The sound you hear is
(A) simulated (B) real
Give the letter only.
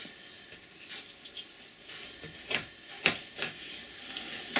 B